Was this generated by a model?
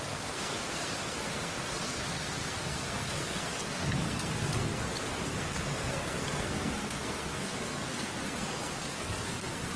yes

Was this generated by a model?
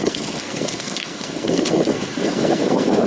yes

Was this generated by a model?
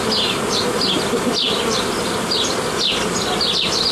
no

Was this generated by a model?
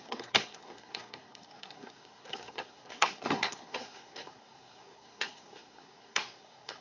yes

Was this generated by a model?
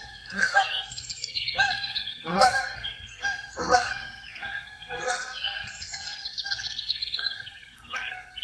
yes